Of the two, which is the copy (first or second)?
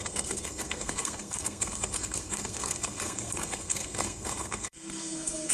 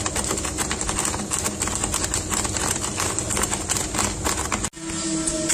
first